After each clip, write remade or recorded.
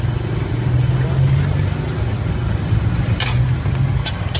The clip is recorded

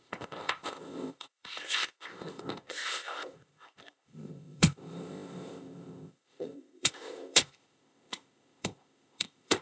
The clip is remade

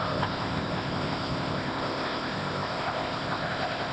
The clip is remade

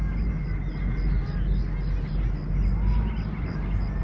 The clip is recorded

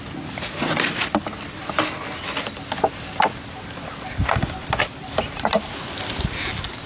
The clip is recorded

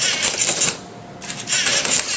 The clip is recorded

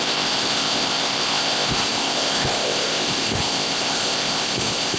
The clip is remade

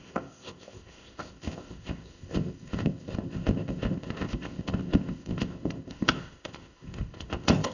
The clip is remade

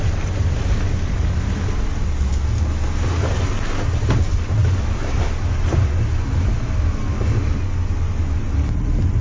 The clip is recorded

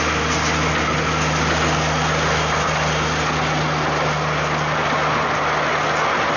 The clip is recorded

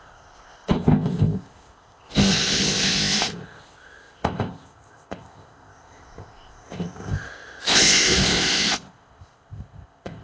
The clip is remade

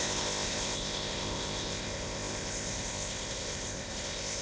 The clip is remade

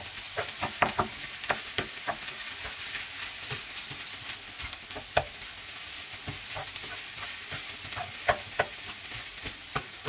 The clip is recorded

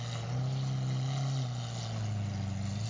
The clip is recorded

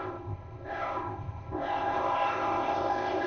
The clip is remade